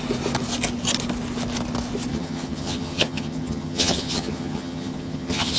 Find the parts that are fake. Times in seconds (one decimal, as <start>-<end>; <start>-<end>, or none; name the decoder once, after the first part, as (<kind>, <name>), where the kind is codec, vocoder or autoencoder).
2.1-5.6 (vocoder, HiFi-GAN)